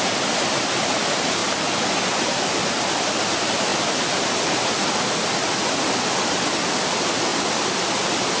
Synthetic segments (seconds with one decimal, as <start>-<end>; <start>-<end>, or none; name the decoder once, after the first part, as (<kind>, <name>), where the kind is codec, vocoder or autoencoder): 1.4-2.4 (vocoder, BigVGAN v2); 3.7-4.8

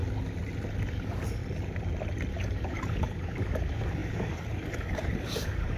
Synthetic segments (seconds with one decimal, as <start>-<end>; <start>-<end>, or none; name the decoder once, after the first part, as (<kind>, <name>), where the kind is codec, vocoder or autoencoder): 0.9-1.4 (codec, DAC); 2.3-5.8

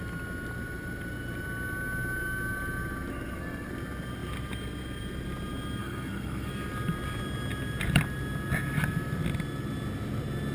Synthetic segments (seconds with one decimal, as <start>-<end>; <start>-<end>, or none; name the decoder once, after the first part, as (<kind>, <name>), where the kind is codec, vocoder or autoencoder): 3.1-3.7 (codec, SNAC); 5.8-6.5

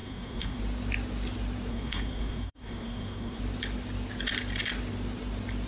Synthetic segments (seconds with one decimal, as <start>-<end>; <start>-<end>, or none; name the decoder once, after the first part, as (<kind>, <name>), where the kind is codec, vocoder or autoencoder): 0.0-0.6 (codec, SNAC); 1.7-3.4

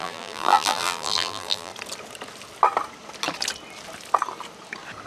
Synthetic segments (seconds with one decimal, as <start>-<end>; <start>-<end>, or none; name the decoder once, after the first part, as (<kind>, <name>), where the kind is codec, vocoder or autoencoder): 0.0-1.7 (vocoder, BigVGAN v2)

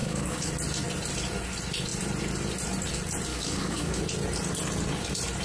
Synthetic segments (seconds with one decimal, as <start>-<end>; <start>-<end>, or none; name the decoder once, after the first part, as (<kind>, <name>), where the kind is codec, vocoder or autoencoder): 0.0-0.5 (codec, DAC); 3.3-4.0

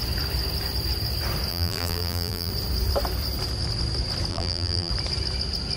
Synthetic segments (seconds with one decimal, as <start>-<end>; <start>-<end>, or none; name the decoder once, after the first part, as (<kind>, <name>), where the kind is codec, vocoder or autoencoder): 1.5-2.5 (vocoder, BigVGAN v2); 4.3-4.9